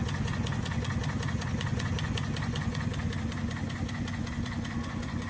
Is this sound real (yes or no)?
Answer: no